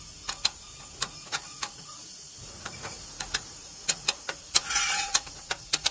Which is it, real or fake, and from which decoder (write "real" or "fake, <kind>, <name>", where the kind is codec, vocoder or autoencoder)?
fake, vocoder, Vocos